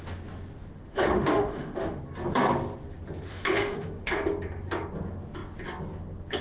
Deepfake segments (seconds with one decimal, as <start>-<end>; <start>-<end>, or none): 0.9-2.0; 3.3-4.1